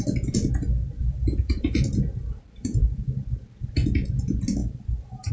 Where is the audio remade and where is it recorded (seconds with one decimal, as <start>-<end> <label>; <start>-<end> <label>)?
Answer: 0.0-1.0 recorded; 1.0-1.8 remade; 1.8-4.6 recorded; 4.6-5.3 remade